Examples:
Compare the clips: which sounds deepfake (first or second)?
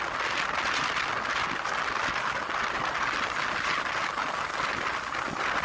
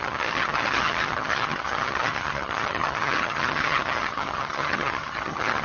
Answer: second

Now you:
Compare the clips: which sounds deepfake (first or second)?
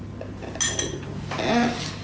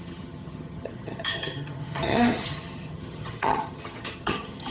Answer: second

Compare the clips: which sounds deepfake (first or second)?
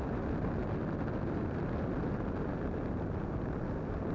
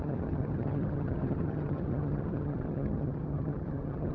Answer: second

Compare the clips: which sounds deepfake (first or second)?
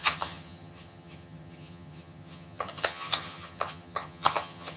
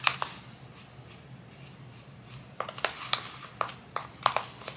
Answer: first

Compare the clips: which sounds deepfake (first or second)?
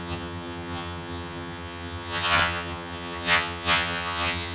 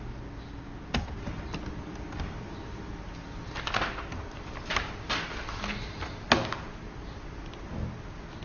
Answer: first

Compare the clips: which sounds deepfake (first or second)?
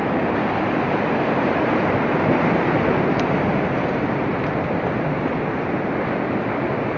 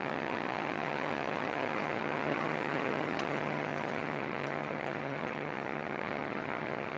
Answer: second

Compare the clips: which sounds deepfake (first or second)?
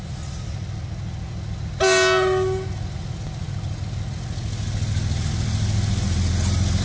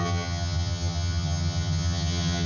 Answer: second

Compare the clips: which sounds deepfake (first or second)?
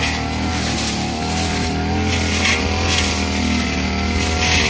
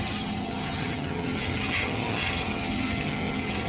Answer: second